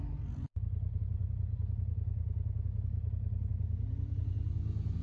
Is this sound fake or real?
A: real